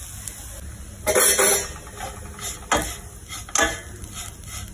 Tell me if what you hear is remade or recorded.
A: recorded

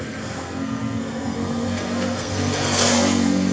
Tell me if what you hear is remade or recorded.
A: remade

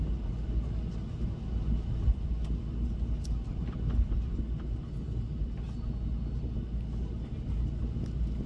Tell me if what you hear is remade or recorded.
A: recorded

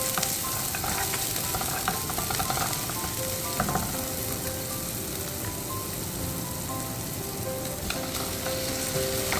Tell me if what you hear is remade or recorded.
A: recorded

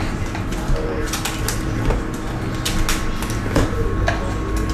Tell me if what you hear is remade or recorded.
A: recorded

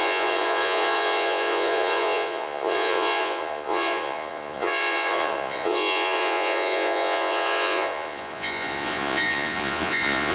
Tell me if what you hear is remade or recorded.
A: remade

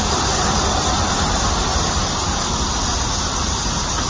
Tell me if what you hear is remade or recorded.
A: recorded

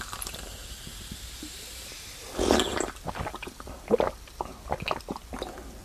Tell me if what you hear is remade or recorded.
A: recorded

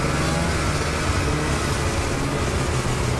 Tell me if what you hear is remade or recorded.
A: recorded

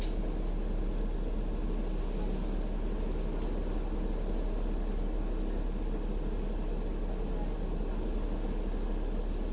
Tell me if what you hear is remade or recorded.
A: recorded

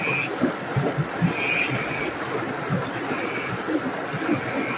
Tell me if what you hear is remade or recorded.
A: recorded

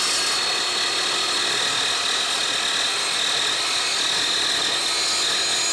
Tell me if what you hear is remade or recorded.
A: recorded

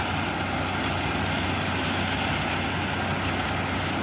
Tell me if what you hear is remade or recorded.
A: recorded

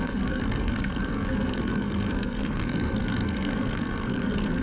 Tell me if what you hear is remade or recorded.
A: remade